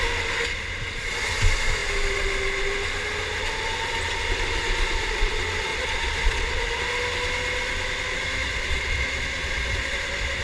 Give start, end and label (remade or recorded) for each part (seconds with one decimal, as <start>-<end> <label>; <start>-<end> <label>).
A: 0.0-5.7 recorded; 5.7-6.8 remade; 6.8-8.4 recorded; 8.4-10.4 remade